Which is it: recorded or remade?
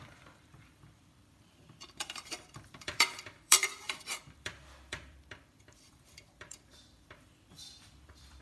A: remade